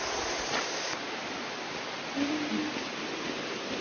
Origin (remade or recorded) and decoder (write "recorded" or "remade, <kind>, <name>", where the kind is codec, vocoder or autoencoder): recorded